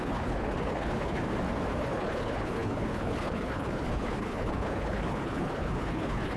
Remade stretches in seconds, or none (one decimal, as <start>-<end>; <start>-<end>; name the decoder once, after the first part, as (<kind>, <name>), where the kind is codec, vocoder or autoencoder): 0.0-1.2 (codec, HILCodec); 1.8-6.4